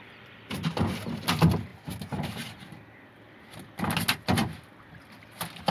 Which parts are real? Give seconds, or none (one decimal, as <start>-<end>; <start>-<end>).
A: 0.0-5.7